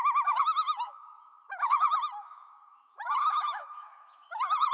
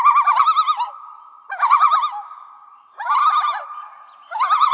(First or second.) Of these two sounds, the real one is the second